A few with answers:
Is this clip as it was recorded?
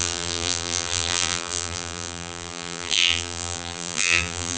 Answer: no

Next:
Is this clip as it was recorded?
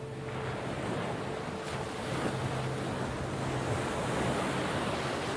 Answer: yes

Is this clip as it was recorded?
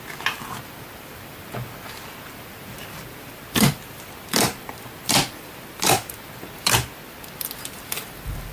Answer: yes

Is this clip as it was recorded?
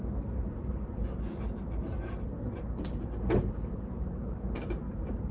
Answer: no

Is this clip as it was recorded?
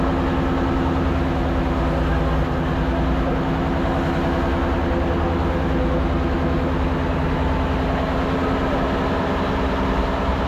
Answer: yes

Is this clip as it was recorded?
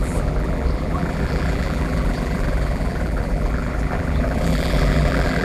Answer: no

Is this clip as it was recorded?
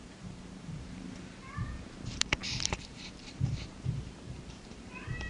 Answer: no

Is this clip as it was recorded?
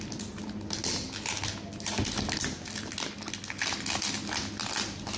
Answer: yes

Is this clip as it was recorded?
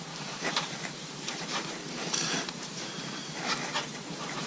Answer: no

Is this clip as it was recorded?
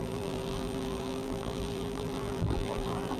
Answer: no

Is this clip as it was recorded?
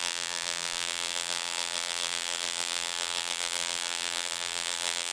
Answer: no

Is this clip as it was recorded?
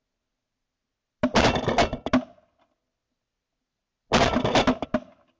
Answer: yes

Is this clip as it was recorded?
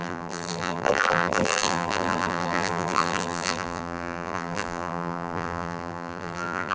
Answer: no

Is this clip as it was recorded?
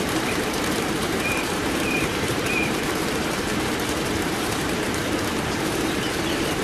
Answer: no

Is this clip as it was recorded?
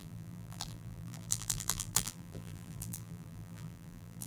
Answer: no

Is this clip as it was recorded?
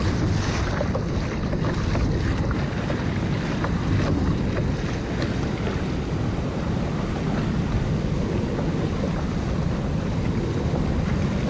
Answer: yes